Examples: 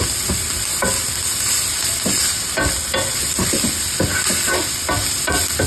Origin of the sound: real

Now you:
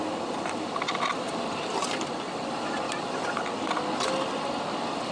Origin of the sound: real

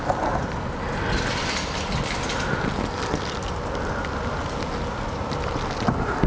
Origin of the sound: real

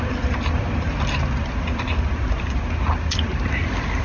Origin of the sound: real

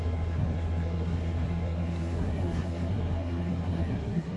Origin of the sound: fake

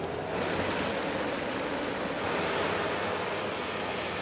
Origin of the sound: real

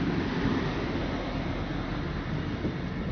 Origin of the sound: real